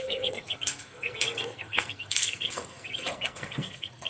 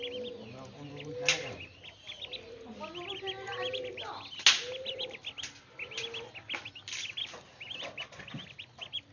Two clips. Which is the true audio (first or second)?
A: second